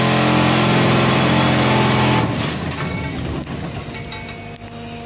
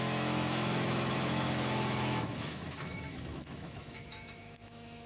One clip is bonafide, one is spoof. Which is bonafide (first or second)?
first